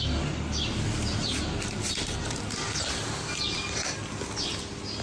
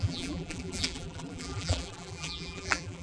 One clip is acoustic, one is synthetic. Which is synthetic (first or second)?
second